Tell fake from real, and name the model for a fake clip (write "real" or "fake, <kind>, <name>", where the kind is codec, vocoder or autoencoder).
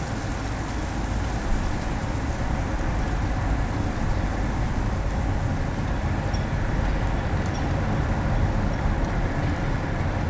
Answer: real